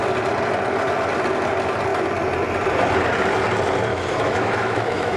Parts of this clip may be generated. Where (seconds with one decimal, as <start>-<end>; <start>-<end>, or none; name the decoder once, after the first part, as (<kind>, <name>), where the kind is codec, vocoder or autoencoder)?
3.9-5.2 (autoencoder, DAC-VAE)